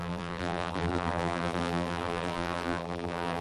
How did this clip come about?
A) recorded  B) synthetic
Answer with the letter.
B